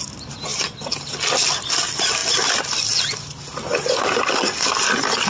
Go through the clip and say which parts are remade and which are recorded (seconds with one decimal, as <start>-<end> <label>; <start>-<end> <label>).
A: 0.0-5.3 recorded